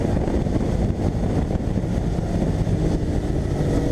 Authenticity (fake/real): real